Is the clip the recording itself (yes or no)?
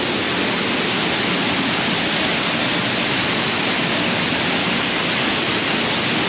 yes